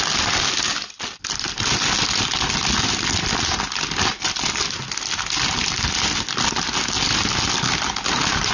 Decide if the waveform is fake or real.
real